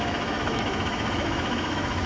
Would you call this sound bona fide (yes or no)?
no